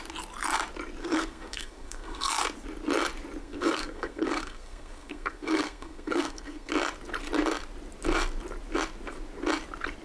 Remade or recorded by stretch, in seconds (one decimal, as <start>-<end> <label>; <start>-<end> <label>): 0.0-1.0 recorded; 1.0-2.3 remade; 2.3-3.4 recorded; 3.4-6.7 remade; 6.7-10.0 recorded